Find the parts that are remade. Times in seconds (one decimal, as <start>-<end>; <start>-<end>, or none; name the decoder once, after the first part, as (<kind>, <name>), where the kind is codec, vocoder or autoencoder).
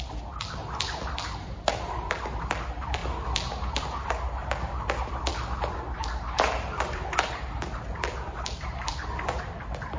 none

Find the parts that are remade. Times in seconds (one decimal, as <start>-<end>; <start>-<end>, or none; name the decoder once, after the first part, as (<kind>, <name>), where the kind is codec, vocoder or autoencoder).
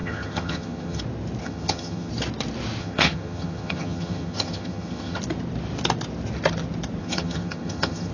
0.0-1.0 (vocoder, HiFi-GAN); 1.4-2.1; 2.8-5.2; 7.0-8.1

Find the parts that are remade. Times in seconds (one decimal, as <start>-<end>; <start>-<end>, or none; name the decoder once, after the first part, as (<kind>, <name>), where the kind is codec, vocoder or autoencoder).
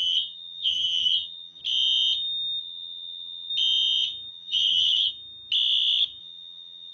0.0-1.6 (vocoder, HiFi-GAN); 2.6-3.5; 4.3-5.1; 6.2-6.9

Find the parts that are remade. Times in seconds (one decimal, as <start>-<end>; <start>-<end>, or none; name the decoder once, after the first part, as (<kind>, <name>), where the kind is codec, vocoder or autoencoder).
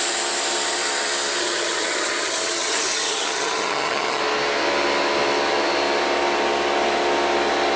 1.4-4.2 (vocoder, HiFi-GAN)